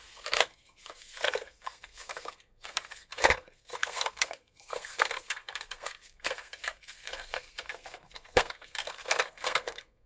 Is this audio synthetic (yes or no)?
yes